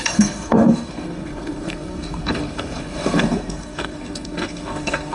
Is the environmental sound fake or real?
fake